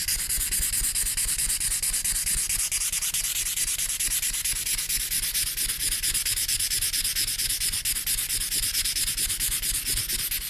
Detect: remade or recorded recorded